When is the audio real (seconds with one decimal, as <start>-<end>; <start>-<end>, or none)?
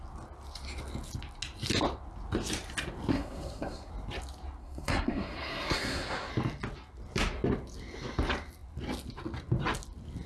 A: 0.0-3.1; 3.9-4.6; 6.3-10.3